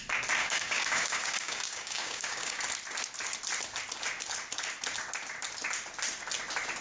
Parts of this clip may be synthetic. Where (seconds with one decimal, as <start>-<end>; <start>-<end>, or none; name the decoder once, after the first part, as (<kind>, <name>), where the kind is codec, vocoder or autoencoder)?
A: 0.4-2.6 (codec, DAC)